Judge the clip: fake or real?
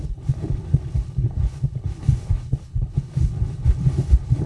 fake